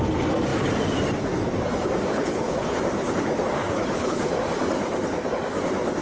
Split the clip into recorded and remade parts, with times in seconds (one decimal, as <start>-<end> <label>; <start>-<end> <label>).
0.0-2.1 recorded; 2.1-2.8 remade; 2.8-3.6 recorded; 3.6-4.3 remade; 4.3-6.0 recorded